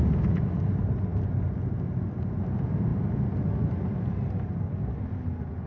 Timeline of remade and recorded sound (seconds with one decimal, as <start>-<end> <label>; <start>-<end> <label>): 0.0-5.7 recorded